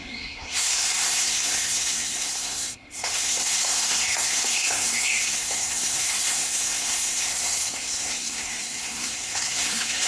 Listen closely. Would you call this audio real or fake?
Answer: fake